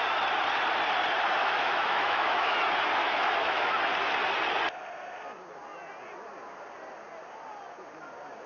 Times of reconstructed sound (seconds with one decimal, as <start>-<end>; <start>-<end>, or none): 1.4-2.6; 3.0-3.7